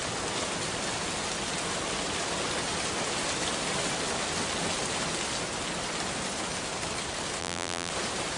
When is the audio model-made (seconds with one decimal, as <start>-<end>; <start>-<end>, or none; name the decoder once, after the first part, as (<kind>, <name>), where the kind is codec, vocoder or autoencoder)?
7.4-7.9 (vocoder, BigVGAN v2)